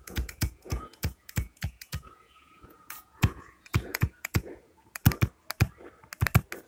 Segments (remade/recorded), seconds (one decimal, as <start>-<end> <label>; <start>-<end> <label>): 0.0-5.0 remade; 5.0-6.7 recorded